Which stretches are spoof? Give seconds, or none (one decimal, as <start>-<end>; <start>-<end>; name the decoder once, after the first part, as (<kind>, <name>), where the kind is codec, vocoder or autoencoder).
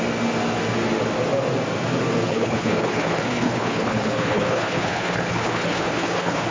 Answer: 2.3-6.5 (codec, HILCodec)